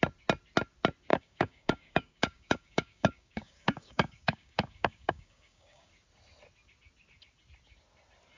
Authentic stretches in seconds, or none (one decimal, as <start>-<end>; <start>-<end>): 0.0-1.1; 5.9-8.4

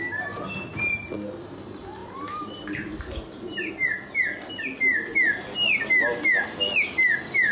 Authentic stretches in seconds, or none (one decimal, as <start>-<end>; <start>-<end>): 0.0-2.0; 3.7-7.5

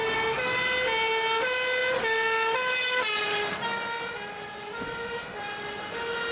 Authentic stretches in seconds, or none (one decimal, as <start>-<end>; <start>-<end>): 0.0-6.3

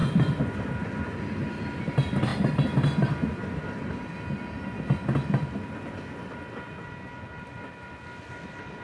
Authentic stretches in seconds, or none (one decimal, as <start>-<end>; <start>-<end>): 0.0-8.8

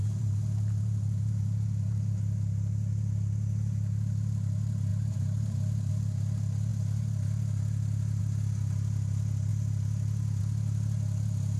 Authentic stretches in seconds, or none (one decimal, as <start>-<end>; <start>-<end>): 2.1-11.6

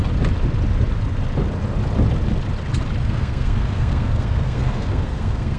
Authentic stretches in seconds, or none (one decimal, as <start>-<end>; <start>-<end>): 0.0-3.0